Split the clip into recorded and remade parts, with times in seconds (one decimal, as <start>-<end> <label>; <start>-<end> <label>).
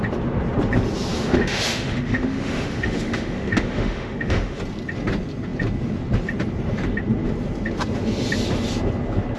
0.0-1.1 recorded; 1.1-4.6 remade; 4.6-9.4 recorded